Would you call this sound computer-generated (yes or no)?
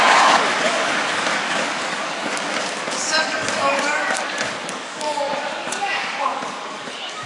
yes